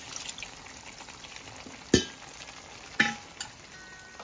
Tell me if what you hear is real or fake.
real